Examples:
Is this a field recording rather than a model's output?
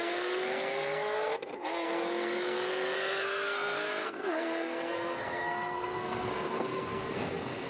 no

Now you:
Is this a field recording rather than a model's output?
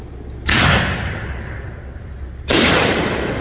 yes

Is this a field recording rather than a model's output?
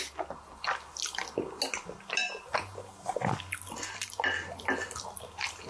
yes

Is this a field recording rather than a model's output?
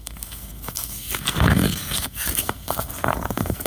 no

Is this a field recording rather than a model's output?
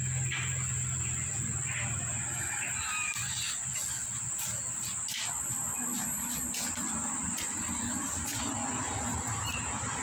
yes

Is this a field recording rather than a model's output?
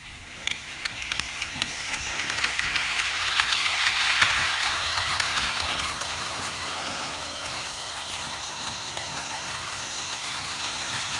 no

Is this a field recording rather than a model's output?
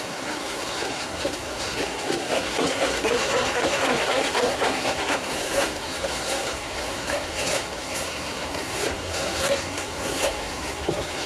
no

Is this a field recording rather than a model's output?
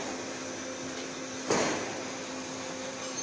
yes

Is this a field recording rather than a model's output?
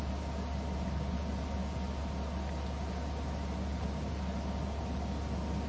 yes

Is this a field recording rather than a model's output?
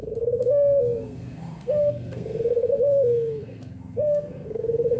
no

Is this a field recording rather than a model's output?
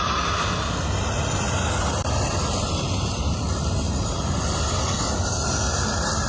yes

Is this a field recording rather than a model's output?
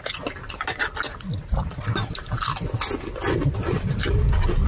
yes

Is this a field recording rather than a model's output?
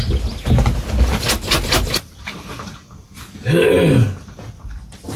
yes